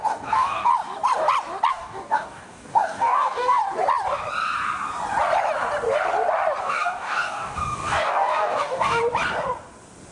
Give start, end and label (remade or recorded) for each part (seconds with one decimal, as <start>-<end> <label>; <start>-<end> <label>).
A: 0.0-0.7 remade; 0.7-1.7 recorded; 1.7-3.6 remade; 3.6-6.6 recorded; 6.6-9.0 remade; 9.0-10.1 recorded